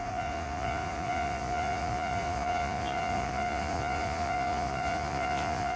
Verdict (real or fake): fake